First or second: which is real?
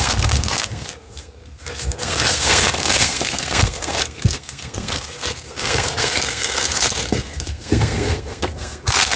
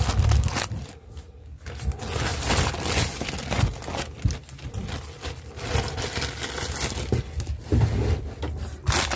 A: second